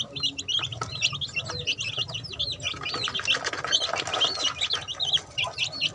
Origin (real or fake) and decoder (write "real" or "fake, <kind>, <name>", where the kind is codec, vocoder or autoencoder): real